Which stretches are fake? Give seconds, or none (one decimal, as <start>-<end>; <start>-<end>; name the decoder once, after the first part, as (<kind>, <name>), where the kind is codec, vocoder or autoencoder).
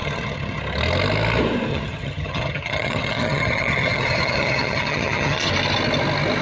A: 0.0-0.6 (vocoder, HiFi-GAN); 1.7-5.5